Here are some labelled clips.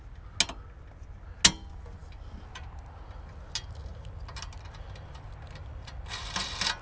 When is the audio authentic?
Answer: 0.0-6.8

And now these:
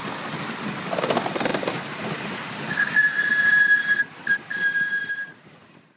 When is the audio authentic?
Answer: 0.0-6.0

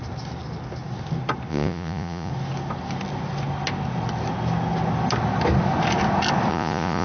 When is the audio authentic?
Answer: 0.0-1.5; 2.3-6.5

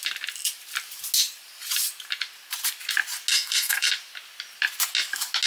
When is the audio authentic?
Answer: 0.0-3.3; 3.9-5.5

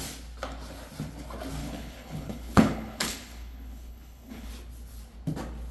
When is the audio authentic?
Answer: 0.0-1.6; 4.5-5.7

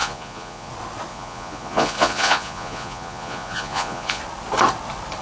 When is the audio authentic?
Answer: 0.7-1.1; 4.2-5.2

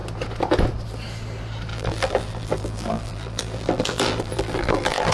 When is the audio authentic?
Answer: 0.0-1.7

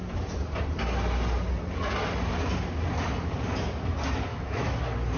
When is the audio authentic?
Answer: 0.0-4.3; 4.8-5.2